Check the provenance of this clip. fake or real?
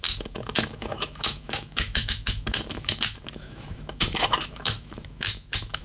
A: fake